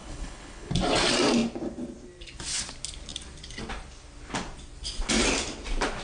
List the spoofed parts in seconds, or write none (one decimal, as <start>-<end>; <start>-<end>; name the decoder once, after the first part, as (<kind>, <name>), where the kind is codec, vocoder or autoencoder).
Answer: 0.0-0.7 (codec, HILCodec)